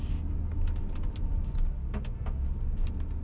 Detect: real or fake real